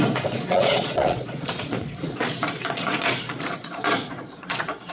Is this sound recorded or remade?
remade